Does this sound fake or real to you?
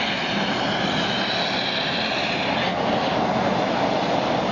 real